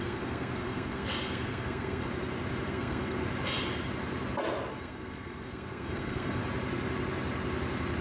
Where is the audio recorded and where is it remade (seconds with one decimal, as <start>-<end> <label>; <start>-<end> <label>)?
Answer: 0.0-2.0 remade; 2.0-2.7 recorded; 2.7-3.2 remade; 3.2-4.7 recorded; 4.7-6.4 remade; 6.4-8.0 recorded